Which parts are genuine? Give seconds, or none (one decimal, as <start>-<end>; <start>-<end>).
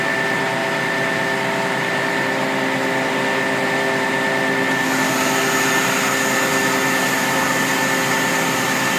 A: 0.0-9.0